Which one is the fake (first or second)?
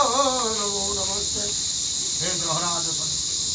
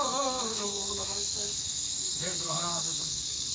second